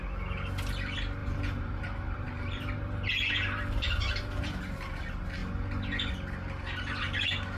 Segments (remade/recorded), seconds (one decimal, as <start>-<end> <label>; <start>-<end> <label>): 0.0-1.2 recorded; 1.2-4.6 remade; 4.6-7.6 recorded